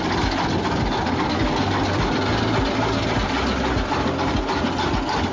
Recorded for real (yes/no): yes